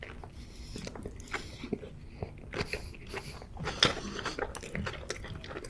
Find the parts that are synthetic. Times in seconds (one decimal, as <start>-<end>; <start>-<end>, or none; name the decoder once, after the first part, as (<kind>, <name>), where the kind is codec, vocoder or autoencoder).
none